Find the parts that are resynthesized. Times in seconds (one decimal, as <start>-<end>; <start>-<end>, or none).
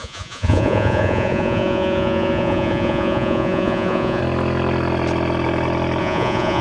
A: 0.0-4.2; 6.0-6.6